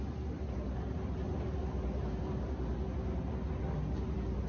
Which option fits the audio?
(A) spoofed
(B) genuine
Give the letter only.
B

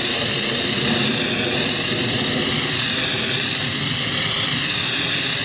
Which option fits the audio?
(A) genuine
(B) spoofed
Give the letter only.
A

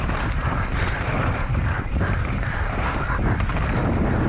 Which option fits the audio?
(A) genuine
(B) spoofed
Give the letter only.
B